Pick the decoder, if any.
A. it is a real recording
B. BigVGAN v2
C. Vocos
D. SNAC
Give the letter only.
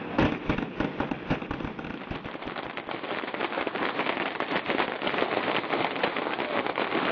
A